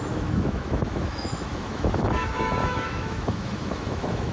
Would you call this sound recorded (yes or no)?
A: no